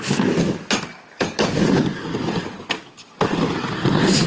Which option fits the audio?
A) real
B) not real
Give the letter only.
A